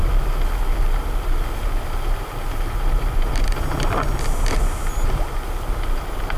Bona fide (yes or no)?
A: yes